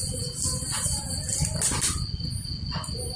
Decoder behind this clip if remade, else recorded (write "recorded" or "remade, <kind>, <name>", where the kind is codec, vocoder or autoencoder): recorded